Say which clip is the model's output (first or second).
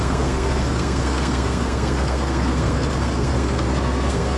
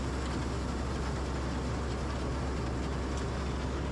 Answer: first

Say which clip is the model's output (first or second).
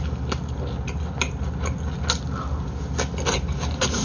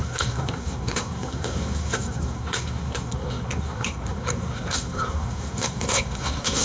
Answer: second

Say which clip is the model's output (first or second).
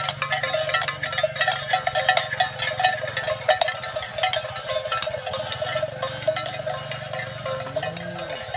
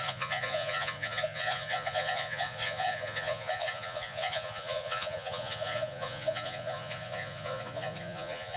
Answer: second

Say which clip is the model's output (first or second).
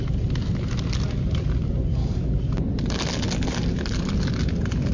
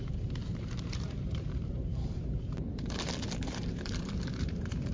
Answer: second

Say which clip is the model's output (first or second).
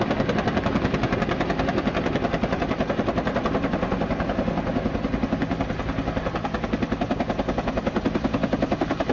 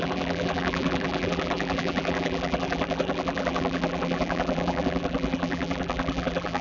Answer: second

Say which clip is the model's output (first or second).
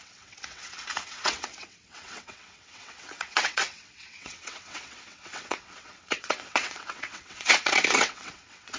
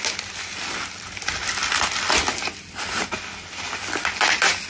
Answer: first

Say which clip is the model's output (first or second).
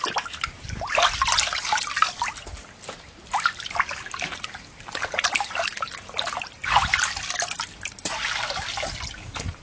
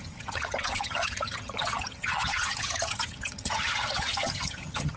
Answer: second